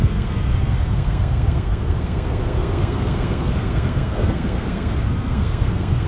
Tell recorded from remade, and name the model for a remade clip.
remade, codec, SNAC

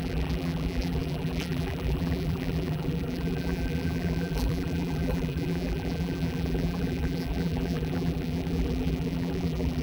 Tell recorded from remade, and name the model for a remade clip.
remade, vocoder, BigVGAN v2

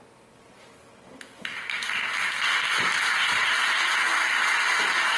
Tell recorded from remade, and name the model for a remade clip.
recorded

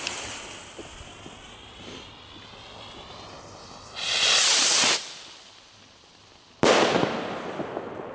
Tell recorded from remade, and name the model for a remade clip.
recorded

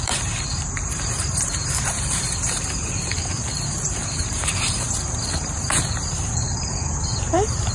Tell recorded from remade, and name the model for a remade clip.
remade, vocoder, BigVGAN v2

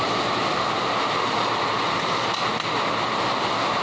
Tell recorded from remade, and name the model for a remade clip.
recorded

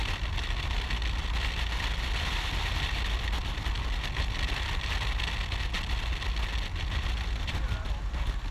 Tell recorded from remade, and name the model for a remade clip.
recorded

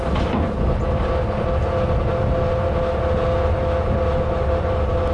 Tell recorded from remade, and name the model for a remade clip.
recorded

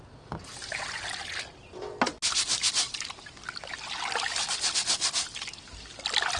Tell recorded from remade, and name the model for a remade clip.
recorded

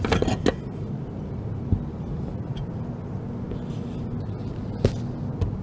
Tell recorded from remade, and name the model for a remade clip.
recorded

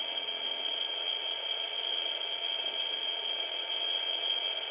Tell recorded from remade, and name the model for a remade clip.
remade, vocoder, Vocos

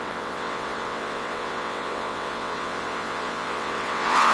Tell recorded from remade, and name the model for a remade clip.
remade, vocoder, WaveNeXt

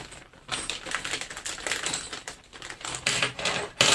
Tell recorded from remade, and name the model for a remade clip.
remade, vocoder, BigVGAN v2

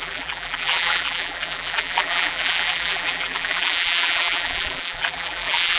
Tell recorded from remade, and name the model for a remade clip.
remade, vocoder, BigVGAN v2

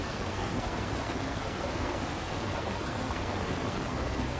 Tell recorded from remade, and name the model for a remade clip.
remade, codec, SNAC